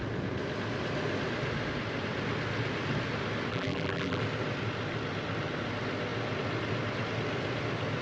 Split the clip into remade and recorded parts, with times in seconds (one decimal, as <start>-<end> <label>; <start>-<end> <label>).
0.0-3.5 recorded; 3.5-4.2 remade; 4.2-8.0 recorded